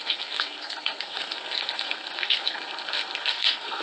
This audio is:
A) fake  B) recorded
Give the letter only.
A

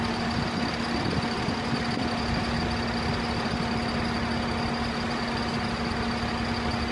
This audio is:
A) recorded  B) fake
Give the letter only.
A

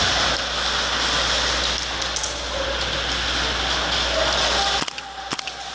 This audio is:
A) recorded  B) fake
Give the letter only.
A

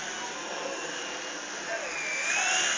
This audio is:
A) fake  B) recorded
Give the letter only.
B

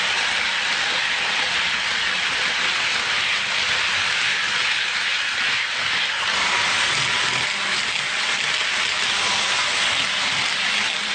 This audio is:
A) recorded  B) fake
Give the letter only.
A